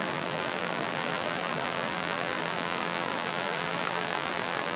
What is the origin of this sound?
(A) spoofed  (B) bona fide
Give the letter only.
A